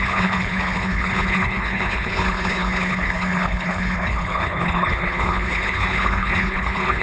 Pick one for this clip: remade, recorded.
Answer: remade